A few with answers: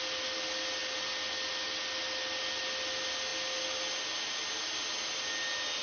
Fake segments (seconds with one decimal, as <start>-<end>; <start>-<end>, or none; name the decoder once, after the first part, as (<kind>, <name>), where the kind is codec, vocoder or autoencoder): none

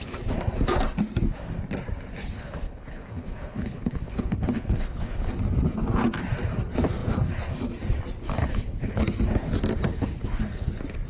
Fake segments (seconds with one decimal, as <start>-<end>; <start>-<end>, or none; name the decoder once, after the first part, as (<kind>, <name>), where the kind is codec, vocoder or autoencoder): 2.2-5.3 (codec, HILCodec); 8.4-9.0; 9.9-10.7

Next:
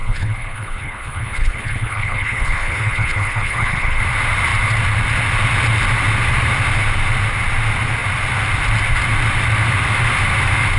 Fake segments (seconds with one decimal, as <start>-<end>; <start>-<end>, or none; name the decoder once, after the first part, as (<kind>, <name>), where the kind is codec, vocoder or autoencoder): 0.0-4.0 (codec, HILCodec)

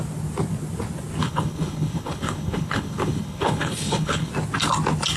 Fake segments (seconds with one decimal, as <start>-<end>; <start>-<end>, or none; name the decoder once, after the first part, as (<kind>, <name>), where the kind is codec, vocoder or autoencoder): 1.2-4.3 (codec, HILCodec)

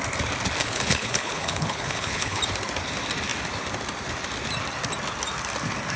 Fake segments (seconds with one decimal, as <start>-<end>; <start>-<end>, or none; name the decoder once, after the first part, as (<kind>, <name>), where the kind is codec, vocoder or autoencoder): 0.6-2.4 (codec, HILCodec)

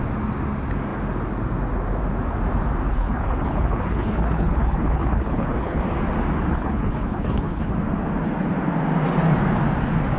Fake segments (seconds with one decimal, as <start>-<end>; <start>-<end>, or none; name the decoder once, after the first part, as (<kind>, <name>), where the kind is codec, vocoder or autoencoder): 2.9-5.8 (codec, HILCodec); 6.5-7.7